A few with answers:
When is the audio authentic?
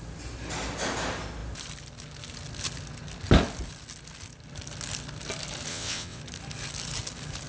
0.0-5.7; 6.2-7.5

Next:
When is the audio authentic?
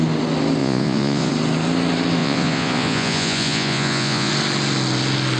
0.0-0.6; 1.3-2.2; 4.3-5.4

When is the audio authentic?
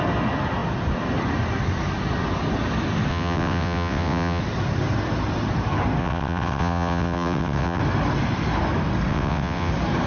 0.0-3.1; 4.4-6.0; 7.8-9.1; 9.7-10.1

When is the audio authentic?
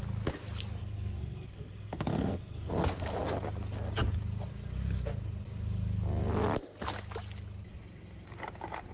0.0-0.8; 2.7-8.9